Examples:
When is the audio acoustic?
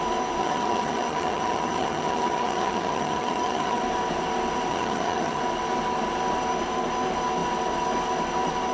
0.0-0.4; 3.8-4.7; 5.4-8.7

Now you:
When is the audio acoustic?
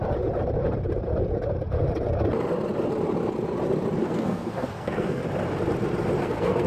0.0-4.0; 5.2-6.2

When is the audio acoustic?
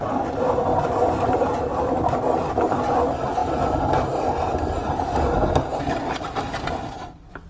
0.0-0.7; 1.4-7.5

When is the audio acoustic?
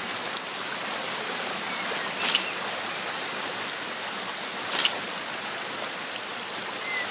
0.0-6.3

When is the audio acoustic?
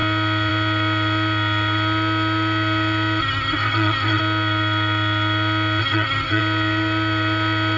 0.0-3.2; 4.2-5.8; 6.4-7.8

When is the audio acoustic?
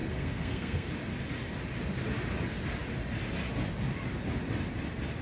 0.9-5.2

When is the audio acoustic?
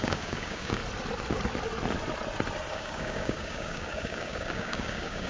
0.8-2.7